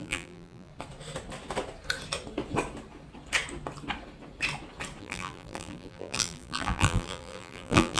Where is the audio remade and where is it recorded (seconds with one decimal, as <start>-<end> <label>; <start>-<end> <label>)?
0.0-0.7 remade; 0.7-5.0 recorded; 5.0-8.0 remade